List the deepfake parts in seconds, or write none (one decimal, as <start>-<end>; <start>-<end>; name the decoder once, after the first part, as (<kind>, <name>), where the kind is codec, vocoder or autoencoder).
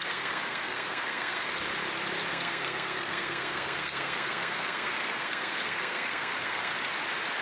0.0-1.5 (codec, SNAC); 2.3-6.7